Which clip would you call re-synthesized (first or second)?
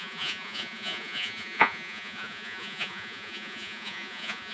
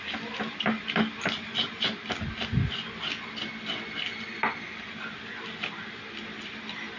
first